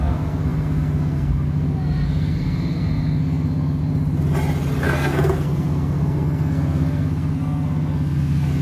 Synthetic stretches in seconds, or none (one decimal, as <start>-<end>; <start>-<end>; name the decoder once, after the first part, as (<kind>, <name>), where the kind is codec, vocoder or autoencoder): 0.0-3.8 (codec, SNAC); 4.8-8.6

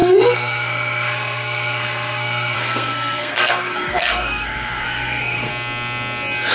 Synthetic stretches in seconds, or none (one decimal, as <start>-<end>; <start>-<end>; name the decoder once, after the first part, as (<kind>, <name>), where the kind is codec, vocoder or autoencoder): 0.0-5.5 (codec, SNAC)

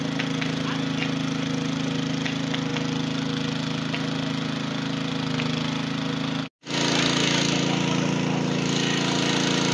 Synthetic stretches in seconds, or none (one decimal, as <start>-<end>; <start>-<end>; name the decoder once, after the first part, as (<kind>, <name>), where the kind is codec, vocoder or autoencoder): none

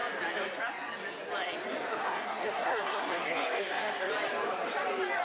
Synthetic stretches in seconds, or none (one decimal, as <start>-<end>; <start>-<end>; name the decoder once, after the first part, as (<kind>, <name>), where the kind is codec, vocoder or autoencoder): 1.9-4.1 (codec, SNAC)

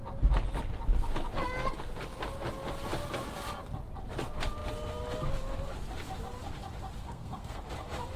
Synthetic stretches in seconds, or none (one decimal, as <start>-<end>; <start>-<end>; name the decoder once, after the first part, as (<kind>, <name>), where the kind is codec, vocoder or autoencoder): 7.0-7.6 (codec, SNAC)